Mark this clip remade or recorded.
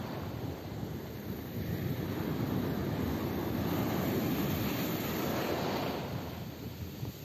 recorded